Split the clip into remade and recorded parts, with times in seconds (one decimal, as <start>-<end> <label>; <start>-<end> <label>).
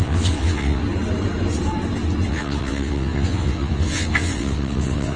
0.0-0.8 remade; 0.8-2.3 recorded; 2.3-5.2 remade